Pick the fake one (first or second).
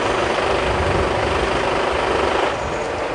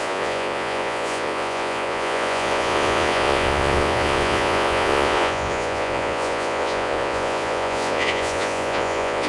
second